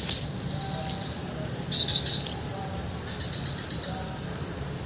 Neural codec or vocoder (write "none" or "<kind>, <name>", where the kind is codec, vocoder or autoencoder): none